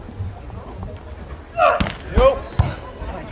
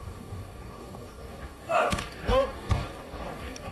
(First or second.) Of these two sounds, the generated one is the second